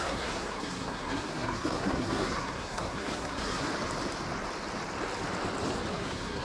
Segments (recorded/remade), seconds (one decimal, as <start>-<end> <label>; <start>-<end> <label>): 0.0-3.7 remade; 3.7-5.9 recorded; 5.9-6.4 remade